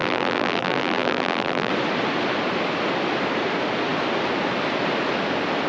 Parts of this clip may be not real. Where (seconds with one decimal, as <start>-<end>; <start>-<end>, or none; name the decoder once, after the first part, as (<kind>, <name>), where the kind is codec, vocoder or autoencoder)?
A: 0.0-1.7 (vocoder, BigVGAN v2)